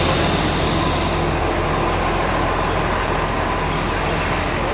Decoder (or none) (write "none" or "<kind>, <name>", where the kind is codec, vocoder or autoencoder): none